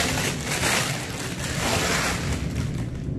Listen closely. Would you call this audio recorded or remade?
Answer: recorded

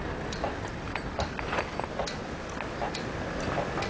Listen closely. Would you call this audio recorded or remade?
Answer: recorded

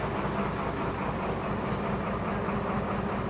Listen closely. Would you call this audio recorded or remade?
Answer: recorded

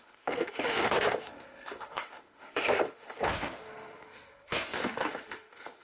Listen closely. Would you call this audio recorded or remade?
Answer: remade